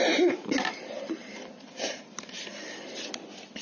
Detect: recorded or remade recorded